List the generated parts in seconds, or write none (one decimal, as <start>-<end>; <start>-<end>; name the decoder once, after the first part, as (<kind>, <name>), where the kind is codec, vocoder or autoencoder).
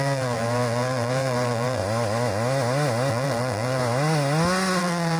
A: 0.0-1.8 (vocoder, BigVGAN v2); 3.1-3.8; 4.8-5.2